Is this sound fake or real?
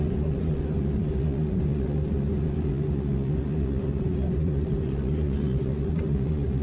fake